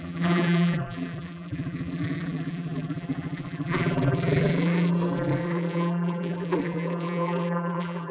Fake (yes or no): yes